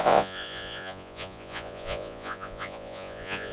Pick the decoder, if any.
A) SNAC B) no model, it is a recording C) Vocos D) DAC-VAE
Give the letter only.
C